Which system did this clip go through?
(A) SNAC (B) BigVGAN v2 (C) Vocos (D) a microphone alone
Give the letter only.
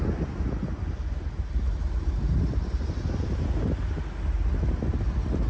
D